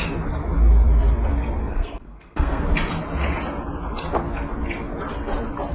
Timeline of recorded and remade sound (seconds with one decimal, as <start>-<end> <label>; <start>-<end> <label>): 0.0-1.6 recorded; 1.6-2.6 remade; 2.6-5.7 recorded